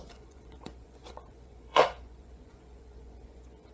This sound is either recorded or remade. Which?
remade